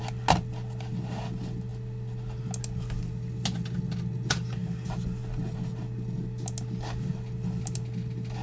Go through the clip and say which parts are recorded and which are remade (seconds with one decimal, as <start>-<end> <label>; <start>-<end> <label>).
0.0-8.4 recorded